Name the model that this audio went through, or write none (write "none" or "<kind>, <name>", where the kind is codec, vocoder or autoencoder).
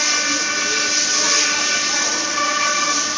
none